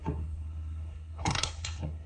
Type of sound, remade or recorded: remade